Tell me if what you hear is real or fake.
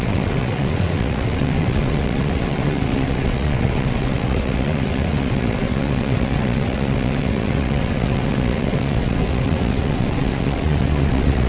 fake